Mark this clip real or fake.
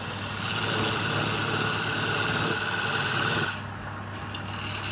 real